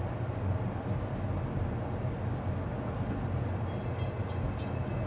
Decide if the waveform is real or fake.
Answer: real